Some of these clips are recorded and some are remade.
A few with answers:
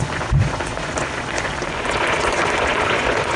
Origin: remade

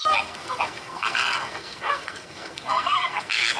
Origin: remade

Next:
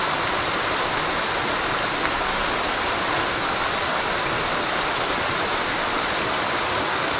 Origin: recorded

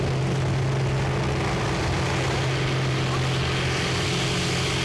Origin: recorded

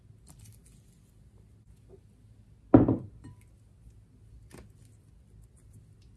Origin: recorded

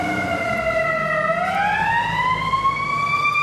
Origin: recorded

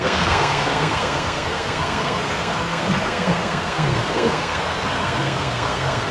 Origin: remade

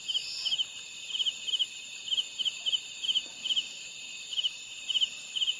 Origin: remade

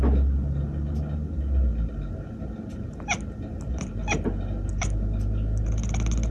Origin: recorded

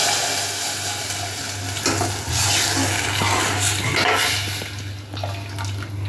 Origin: recorded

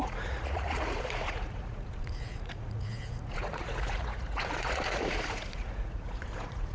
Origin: remade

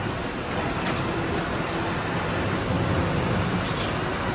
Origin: recorded